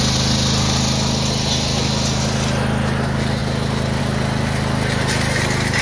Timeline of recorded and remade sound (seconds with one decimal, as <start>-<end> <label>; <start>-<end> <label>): 0.0-5.8 recorded